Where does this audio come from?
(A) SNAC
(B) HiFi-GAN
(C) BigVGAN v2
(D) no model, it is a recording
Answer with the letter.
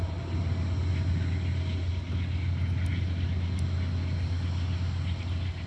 D